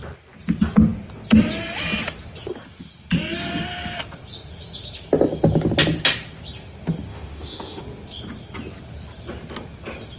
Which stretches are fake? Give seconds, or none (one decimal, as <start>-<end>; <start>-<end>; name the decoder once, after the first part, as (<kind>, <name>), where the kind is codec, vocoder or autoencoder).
7.1-7.8 (autoencoder, DAC-VAE)